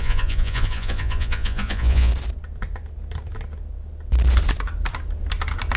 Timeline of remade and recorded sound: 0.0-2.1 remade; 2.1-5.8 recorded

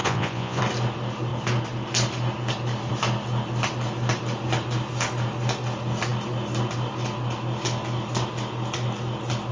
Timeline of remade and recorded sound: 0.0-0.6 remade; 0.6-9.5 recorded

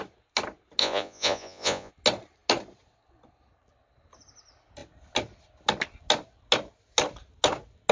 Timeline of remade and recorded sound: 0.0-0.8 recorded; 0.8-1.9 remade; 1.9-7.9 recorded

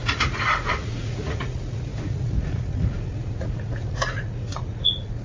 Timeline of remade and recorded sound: 0.0-5.2 remade

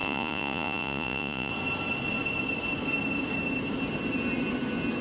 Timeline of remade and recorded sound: 0.0-1.5 remade; 1.5-5.0 recorded